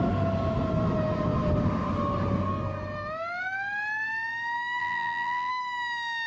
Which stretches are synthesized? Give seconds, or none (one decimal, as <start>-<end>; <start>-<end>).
4.8-5.5